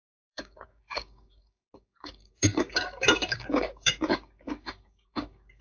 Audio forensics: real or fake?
fake